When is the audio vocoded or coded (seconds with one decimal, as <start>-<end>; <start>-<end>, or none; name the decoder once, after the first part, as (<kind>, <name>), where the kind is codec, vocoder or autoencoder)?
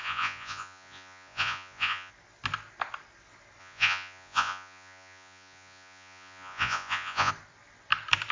0.0-2.1 (vocoder, Vocos); 3.6-7.3